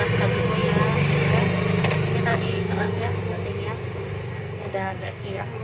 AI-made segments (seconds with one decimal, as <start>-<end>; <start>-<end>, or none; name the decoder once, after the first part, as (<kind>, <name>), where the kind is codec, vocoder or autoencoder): 2.3-3.1 (codec, SNAC); 4.4-5.6